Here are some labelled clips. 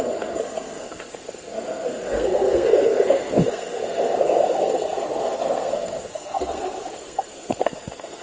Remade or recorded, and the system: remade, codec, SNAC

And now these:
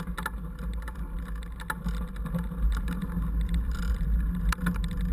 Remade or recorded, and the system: recorded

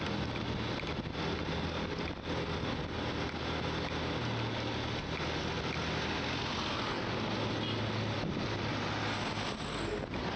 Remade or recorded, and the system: recorded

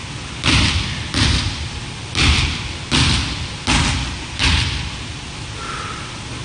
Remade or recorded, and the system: recorded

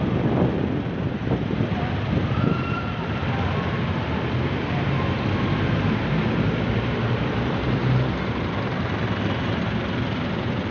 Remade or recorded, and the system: remade, vocoder, BigVGAN v2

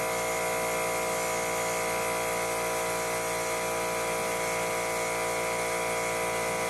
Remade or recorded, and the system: recorded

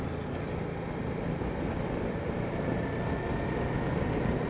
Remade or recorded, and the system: recorded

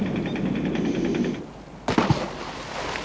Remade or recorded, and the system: recorded